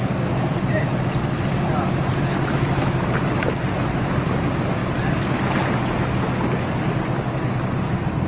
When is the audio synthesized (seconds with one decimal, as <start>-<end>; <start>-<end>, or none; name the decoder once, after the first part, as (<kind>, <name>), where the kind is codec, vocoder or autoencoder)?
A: none